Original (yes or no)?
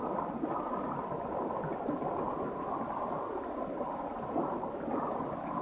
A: yes